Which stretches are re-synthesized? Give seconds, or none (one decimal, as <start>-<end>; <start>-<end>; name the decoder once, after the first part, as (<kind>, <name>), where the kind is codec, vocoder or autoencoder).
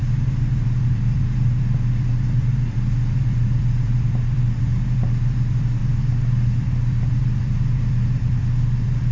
0.0-5.8 (vocoder, BigVGAN v2); 6.6-9.1